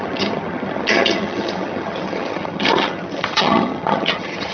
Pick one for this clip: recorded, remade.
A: remade